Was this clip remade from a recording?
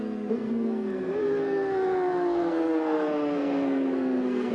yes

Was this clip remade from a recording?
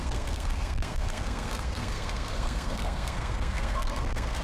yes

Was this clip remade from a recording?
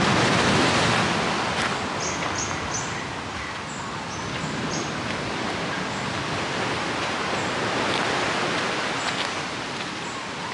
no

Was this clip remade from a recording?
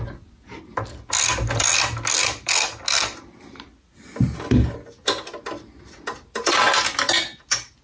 no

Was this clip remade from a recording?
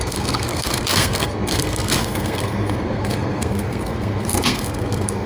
yes